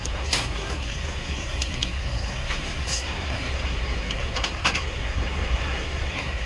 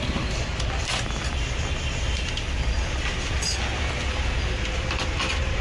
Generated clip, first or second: first